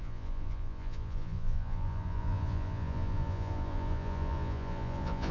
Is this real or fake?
fake